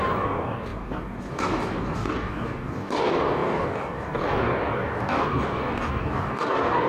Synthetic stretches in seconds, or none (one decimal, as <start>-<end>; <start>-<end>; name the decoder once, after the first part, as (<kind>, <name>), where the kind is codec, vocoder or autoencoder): 0.0-6.9 (codec, DAC)